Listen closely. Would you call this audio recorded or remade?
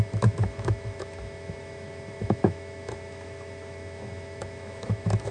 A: remade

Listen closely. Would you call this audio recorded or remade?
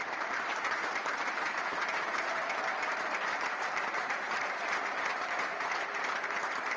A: remade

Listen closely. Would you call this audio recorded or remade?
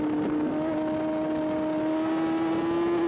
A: recorded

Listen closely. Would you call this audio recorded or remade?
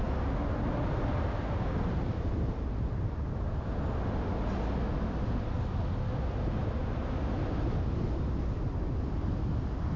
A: recorded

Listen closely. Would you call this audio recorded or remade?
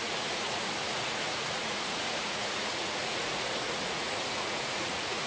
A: remade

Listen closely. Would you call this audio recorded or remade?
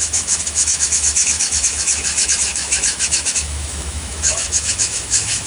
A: remade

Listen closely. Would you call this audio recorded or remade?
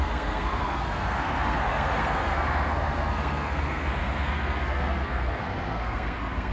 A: remade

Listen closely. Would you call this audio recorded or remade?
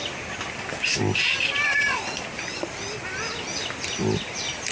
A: recorded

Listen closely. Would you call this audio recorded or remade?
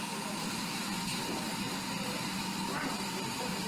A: recorded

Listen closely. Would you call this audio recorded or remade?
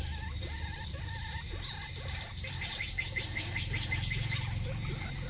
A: recorded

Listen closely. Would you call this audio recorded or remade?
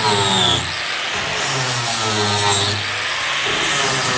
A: recorded